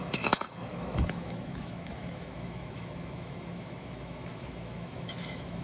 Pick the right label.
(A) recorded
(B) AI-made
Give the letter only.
B